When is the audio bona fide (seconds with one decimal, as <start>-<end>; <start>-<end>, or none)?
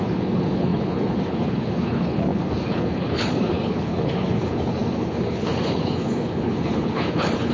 none